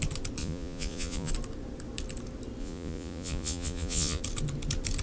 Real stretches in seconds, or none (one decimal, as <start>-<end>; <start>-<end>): 0.0-0.4; 1.3-2.6; 4.2-5.0